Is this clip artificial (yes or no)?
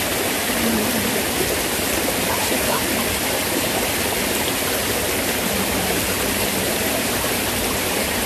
no